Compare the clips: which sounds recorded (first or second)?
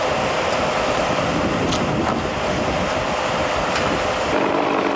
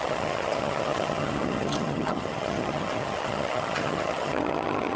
first